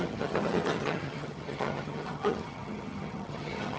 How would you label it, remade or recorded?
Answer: remade